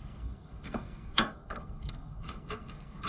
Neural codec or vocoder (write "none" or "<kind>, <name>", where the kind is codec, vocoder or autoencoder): codec, SNAC